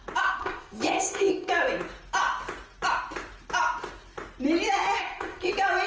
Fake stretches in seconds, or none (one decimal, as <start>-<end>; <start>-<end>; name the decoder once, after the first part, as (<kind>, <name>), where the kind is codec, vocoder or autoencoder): 0.4-1.5 (codec, ZipCodec); 5.0-5.5